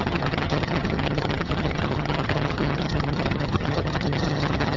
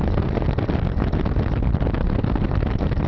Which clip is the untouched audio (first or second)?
second